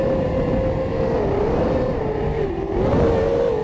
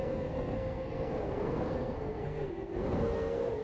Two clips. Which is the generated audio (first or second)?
second